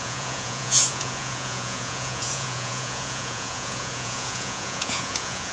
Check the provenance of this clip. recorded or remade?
remade